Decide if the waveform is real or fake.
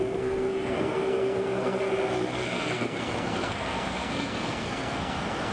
fake